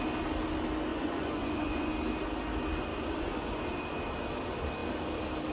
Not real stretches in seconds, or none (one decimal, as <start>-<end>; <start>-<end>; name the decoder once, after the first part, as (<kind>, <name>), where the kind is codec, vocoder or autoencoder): 0.9-1.9 (vocoder, Vocos); 2.9-3.6